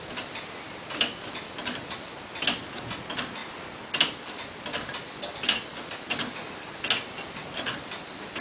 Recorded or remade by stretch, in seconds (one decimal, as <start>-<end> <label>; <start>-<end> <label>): 0.0-8.4 recorded